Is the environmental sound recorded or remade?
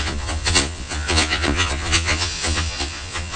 remade